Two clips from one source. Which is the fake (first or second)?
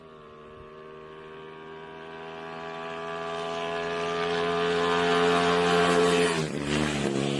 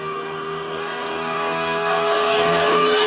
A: second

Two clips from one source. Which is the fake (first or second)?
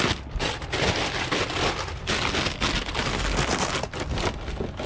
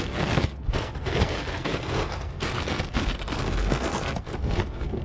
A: second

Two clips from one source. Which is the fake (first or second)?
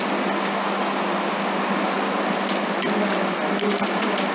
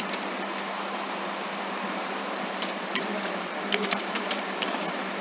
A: second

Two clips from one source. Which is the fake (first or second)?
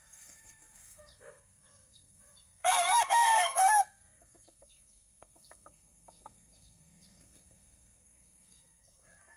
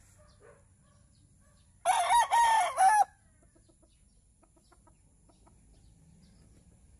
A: first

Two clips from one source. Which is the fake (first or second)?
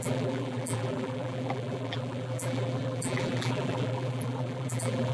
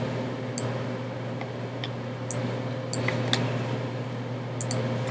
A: first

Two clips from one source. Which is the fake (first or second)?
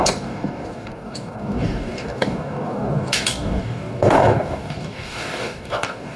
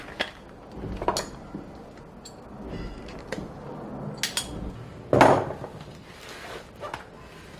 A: first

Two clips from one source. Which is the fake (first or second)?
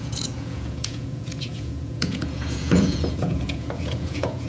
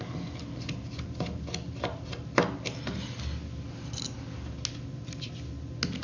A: first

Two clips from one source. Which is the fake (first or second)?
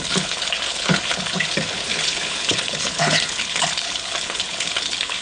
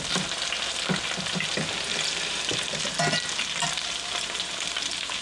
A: first